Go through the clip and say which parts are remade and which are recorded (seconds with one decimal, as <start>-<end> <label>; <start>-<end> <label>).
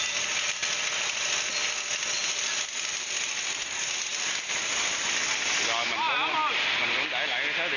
0.0-7.8 recorded